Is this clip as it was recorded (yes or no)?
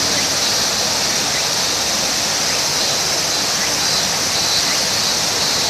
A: yes